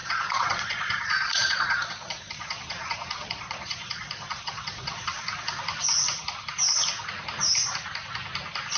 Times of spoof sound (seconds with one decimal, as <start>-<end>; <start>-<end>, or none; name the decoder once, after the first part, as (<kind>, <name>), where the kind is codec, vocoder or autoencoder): 0.0-5.1 (vocoder, Vocos)